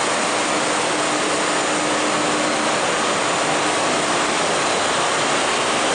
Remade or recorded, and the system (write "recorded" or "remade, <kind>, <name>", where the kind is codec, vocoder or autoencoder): recorded